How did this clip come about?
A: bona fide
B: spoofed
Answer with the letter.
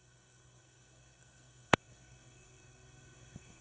B